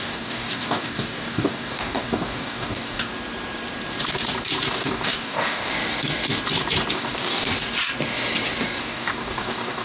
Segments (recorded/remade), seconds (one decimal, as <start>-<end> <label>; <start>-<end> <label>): 0.0-3.1 remade; 3.1-4.7 recorded; 4.7-5.7 remade; 5.7-6.9 recorded; 6.9-7.5 remade; 7.5-8.8 recorded; 8.8-9.8 remade